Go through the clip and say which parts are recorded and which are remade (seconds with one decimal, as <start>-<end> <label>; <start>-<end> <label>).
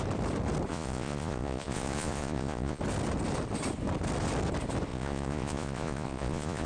0.0-0.7 recorded; 0.7-2.8 remade; 2.8-4.9 recorded; 4.9-6.7 remade